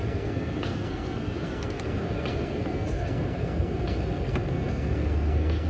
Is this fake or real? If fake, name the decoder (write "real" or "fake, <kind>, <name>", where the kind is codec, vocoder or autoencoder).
fake, codec, SNAC